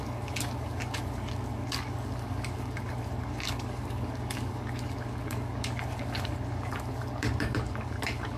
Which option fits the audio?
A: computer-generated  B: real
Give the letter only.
A